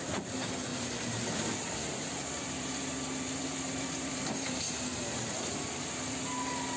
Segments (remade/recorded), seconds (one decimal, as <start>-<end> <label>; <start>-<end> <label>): 0.0-0.7 recorded; 0.7-4.6 remade; 4.6-6.8 recorded